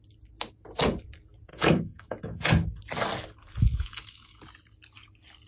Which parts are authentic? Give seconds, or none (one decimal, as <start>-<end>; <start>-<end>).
0.0-1.5; 2.7-3.7; 4.4-5.5